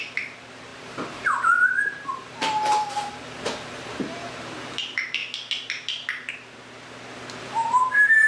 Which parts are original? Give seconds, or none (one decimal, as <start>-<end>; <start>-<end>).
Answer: 5.2-7.4